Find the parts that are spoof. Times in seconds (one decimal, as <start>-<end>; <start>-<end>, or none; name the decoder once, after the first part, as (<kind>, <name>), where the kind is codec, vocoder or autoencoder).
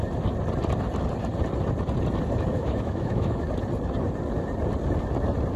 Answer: 2.5-3.4 (autoencoder, DAC-VAE)